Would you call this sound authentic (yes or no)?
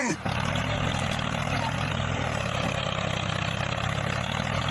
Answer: yes